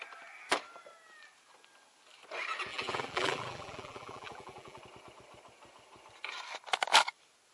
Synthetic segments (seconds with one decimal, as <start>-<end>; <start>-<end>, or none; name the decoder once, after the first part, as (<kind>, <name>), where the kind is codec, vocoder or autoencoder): 2.7-4.8 (vocoder, BigVGAN v2)